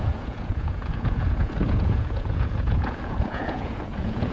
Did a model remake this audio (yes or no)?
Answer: yes